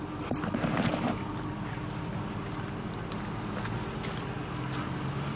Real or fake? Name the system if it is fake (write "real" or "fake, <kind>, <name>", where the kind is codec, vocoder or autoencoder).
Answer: real